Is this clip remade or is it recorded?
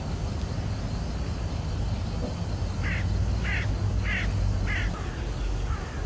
recorded